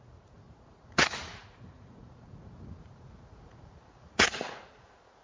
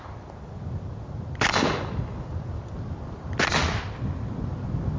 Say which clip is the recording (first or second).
second